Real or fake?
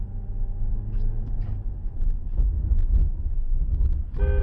real